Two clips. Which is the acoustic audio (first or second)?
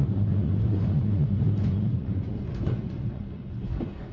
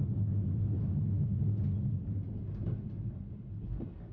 second